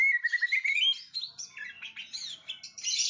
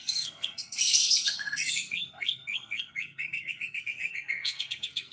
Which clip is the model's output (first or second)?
second